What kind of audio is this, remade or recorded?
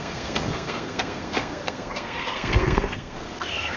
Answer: remade